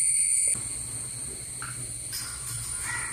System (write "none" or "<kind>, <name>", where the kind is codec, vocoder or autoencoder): none